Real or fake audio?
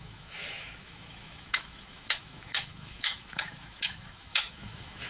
fake